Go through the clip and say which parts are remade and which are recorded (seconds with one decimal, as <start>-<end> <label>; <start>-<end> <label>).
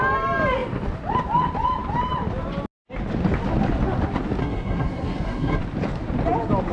0.0-4.4 recorded; 4.4-5.6 remade; 5.6-6.7 recorded